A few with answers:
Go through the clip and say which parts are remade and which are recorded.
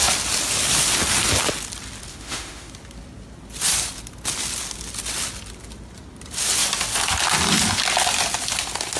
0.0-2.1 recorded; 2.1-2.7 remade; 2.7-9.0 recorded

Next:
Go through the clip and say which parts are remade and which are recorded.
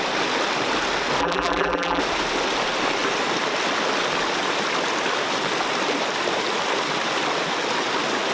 0.0-1.2 recorded; 1.2-2.0 remade; 2.0-8.3 recorded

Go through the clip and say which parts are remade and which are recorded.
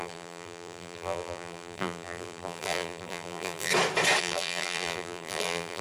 0.0-3.7 remade; 3.7-4.2 recorded; 4.2-5.8 remade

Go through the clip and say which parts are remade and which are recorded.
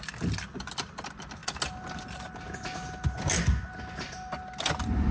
0.0-5.1 recorded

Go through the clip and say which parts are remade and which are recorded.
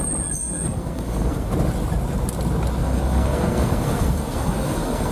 0.0-0.4 recorded; 0.4-1.5 remade; 1.5-2.8 recorded; 2.8-5.1 remade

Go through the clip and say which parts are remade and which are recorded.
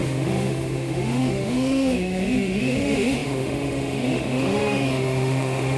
0.0-5.8 remade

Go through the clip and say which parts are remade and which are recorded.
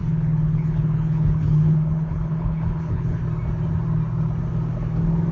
0.0-3.2 remade; 3.2-5.3 recorded